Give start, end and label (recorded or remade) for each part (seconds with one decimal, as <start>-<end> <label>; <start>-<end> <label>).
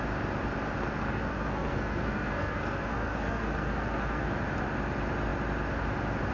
0.0-1.0 recorded; 1.0-4.3 remade; 4.3-6.3 recorded